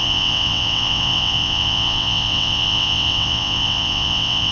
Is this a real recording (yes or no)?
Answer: no